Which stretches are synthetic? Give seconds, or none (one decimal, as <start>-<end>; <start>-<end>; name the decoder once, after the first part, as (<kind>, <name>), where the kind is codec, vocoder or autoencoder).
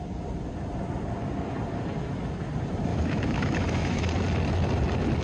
2.9-4.1 (autoencoder, DAC-VAE)